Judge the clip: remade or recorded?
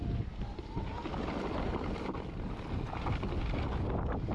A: recorded